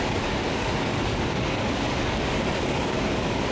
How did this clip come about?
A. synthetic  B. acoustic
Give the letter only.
A